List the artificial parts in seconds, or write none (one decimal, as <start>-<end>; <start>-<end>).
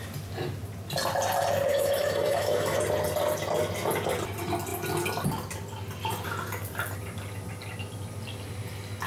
1.7-2.8